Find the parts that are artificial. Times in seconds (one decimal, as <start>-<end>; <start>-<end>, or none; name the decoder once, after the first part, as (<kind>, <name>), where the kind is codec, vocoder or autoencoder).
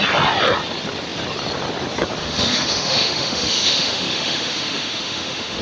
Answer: 2.2-5.6 (autoencoder, DAC-VAE)